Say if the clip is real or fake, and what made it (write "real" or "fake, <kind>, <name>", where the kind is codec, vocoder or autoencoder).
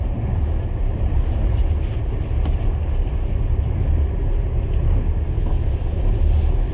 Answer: real